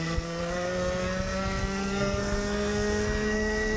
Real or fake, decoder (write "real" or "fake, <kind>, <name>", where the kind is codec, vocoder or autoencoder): fake, codec, SNAC